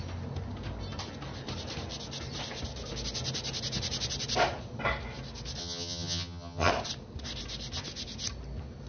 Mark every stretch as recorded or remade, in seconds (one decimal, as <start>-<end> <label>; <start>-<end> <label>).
0.0-5.6 recorded; 5.6-6.7 remade; 6.7-8.9 recorded